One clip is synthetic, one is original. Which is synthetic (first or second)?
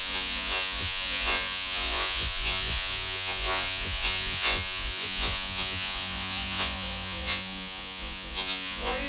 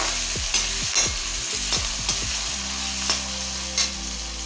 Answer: first